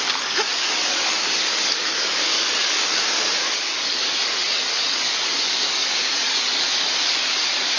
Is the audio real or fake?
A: fake